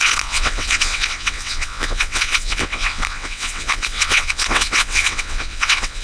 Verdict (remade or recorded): remade